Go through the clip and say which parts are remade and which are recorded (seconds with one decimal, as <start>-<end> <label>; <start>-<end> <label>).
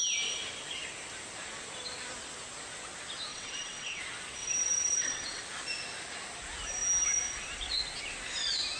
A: 0.0-3.3 recorded; 3.3-4.0 remade; 4.0-4.4 recorded; 4.4-5.4 remade; 5.4-8.8 recorded